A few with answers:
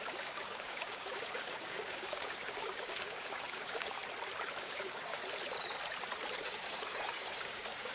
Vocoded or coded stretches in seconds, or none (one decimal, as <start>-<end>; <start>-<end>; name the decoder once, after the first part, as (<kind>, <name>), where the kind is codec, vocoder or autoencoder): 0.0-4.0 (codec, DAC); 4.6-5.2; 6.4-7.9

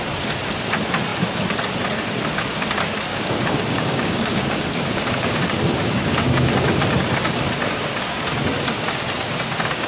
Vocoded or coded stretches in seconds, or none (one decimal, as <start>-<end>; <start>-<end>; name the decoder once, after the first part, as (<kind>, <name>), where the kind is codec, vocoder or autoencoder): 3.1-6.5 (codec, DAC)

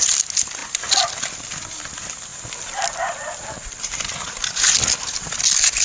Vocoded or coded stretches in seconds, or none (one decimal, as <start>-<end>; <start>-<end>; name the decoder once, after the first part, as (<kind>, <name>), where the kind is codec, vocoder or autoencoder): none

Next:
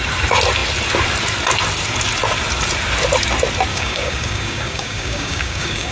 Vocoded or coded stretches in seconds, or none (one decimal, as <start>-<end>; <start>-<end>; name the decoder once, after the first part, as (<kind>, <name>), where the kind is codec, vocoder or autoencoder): 3.7-5.9 (codec, DAC)

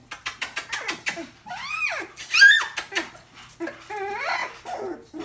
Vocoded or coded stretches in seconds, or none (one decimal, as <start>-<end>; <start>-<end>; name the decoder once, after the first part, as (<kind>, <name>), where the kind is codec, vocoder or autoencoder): none

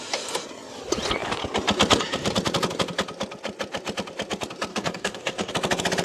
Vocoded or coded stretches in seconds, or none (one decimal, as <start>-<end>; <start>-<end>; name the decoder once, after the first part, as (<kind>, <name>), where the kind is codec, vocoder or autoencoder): 4.7-5.5 (codec, DAC)

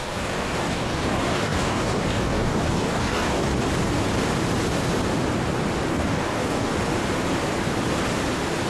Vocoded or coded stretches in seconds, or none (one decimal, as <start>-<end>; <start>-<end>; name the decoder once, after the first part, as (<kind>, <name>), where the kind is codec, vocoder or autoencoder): 0.0-3.5 (codec, DAC); 5.9-6.7